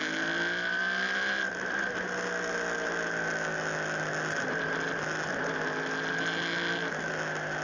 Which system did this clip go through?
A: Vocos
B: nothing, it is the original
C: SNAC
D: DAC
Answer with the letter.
B